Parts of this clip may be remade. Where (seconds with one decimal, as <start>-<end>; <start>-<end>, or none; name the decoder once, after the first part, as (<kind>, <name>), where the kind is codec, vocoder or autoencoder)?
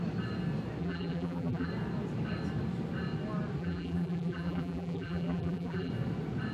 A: 0.8-1.7 (vocoder, BigVGAN v2); 3.6-5.9